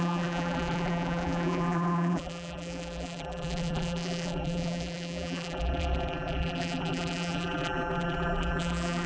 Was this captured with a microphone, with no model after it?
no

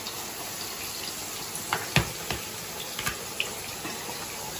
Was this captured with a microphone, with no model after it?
yes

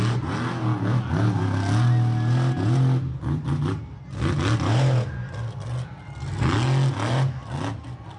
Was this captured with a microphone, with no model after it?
yes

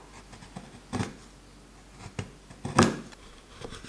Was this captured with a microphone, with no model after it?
yes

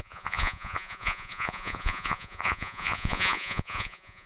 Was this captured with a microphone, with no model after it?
no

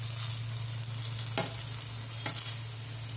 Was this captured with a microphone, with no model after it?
yes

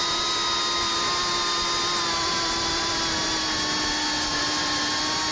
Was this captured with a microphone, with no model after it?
yes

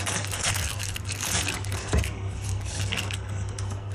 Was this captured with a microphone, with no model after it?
no